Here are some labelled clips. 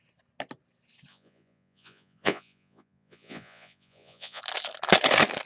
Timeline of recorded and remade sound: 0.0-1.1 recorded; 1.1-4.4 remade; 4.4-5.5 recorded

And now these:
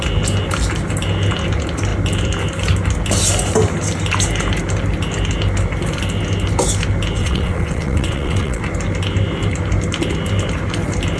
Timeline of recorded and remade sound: 0.0-7.2 recorded; 7.2-8.6 remade; 8.6-11.2 recorded

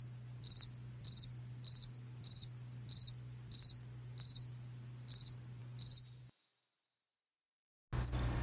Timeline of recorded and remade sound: 0.0-8.4 recorded

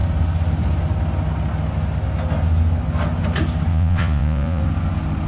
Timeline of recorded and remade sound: 0.0-3.7 recorded; 3.7-4.6 remade; 4.6-5.3 recorded

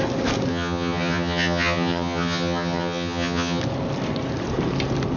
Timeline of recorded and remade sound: 0.0-0.5 recorded; 0.5-3.6 remade; 3.6-5.2 recorded

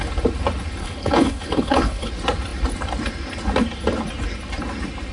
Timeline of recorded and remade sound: 0.0-0.8 recorded; 0.8-2.1 remade; 2.1-5.1 recorded

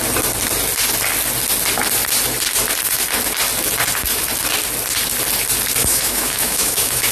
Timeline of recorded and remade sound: 0.0-5.8 recorded; 5.8-7.1 remade